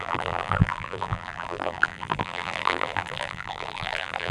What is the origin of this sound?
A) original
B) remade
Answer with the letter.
B